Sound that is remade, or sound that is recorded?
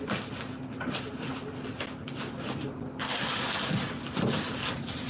recorded